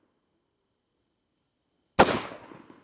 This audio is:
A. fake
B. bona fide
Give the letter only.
B